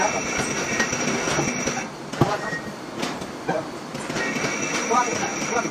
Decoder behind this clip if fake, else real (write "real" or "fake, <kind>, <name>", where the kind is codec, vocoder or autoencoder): real